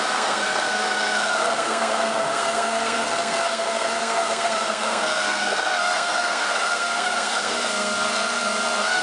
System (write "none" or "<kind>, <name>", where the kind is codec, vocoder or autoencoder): codec, SNAC